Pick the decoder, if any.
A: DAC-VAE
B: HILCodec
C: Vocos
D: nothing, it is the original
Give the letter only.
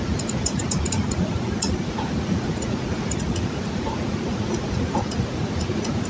C